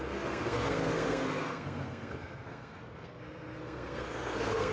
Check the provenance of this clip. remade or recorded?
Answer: remade